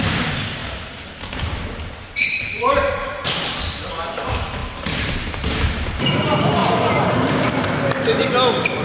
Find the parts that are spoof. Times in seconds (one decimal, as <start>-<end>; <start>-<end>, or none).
0.6-3.9; 4.6-6.0; 6.6-8.2